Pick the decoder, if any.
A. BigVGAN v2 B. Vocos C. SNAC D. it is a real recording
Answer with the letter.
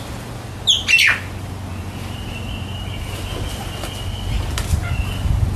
D